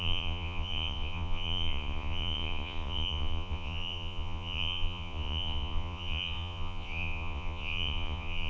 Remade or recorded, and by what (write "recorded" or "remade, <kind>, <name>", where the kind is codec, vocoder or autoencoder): remade, vocoder, Vocos